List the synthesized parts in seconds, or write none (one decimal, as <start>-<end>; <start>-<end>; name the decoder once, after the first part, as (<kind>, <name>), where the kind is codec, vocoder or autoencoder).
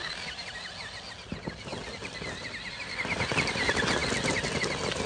none